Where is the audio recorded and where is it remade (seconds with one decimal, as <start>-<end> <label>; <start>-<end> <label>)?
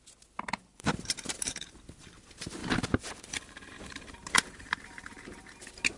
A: 0.0-0.7 recorded; 0.7-2.2 remade; 2.2-2.6 recorded; 2.6-5.5 remade; 5.5-6.0 recorded